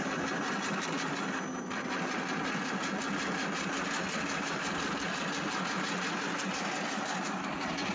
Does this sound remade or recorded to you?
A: recorded